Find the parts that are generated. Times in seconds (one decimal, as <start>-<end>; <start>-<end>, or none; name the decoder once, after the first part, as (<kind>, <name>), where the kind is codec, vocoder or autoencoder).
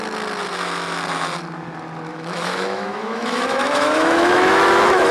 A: 2.1-5.1 (autoencoder, DAC-VAE)